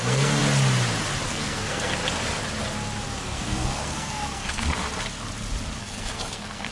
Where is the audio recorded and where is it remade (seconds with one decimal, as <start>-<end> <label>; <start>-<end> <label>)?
0.0-0.4 remade; 0.4-1.3 recorded; 1.3-2.0 remade; 2.0-3.2 recorded; 3.2-4.8 remade; 4.8-5.8 recorded; 5.8-6.7 remade